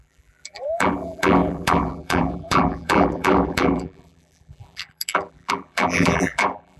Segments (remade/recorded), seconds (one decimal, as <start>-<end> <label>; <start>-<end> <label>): 0.0-6.8 remade